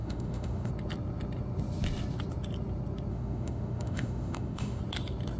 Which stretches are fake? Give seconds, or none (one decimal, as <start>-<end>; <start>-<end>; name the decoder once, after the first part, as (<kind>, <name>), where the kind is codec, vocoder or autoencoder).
0.0-0.7 (autoencoder, DAC-VAE); 3.1-4.8